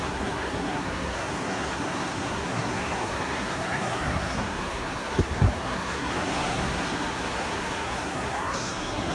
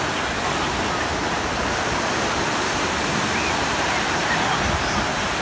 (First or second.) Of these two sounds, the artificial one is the first